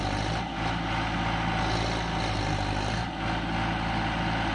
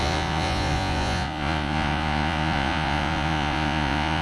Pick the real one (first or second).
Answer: first